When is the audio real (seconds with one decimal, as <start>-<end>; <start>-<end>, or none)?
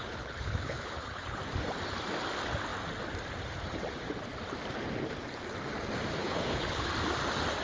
1.4-6.2; 6.9-7.6